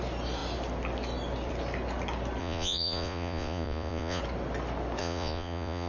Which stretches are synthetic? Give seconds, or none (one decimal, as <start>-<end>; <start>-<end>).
2.4-4.2; 5.0-5.9